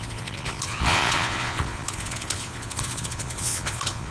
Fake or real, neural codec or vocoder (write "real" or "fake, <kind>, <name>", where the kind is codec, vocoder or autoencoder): fake, vocoder, Vocos